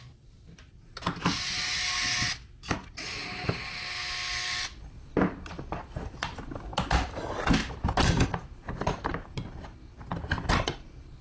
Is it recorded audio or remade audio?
recorded